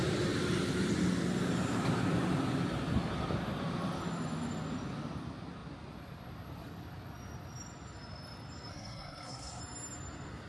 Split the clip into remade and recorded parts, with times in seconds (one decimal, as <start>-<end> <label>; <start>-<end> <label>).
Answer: 0.0-8.7 recorded; 8.7-9.6 remade; 9.6-10.5 recorded

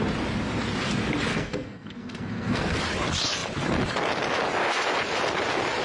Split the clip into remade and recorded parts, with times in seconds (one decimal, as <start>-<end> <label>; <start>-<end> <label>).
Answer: 0.0-1.3 recorded; 1.3-2.8 remade; 2.8-5.8 recorded

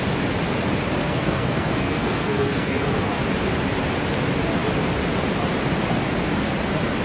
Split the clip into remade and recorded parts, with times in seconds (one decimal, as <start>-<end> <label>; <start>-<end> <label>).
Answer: 0.0-1.0 recorded; 1.0-3.2 remade; 3.2-7.0 recorded

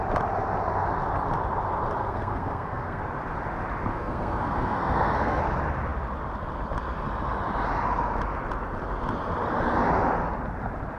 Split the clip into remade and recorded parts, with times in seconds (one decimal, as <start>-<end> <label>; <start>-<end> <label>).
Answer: 0.0-2.0 recorded; 2.0-3.0 remade; 3.0-3.9 recorded; 3.9-5.4 remade; 5.4-11.0 recorded

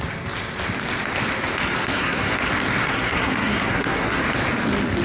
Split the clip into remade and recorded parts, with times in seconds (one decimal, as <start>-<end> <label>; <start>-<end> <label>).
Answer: 0.0-1.8 recorded; 1.8-2.4 remade; 2.4-2.8 recorded; 2.8-4.2 remade; 4.2-5.0 recorded